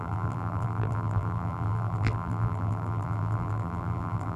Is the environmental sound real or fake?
fake